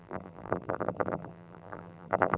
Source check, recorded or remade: remade